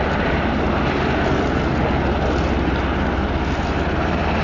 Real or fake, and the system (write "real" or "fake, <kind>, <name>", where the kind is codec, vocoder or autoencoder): real